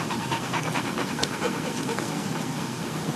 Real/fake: fake